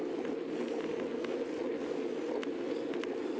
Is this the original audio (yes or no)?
yes